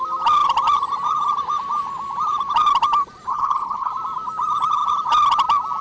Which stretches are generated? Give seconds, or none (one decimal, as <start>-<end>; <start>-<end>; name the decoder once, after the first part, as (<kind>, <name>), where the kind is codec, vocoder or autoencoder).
3.3-3.9 (codec, HILCodec)